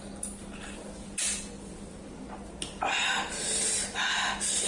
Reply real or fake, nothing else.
real